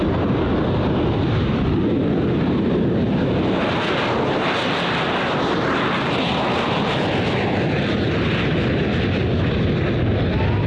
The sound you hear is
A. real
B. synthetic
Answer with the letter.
A